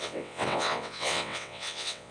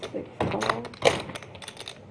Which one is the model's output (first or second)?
first